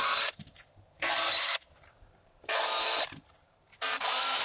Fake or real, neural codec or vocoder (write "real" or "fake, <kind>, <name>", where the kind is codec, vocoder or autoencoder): fake, vocoder, BigVGAN v2